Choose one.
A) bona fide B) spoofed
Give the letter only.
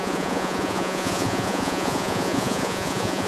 B